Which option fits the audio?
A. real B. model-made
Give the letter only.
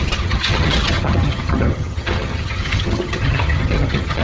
B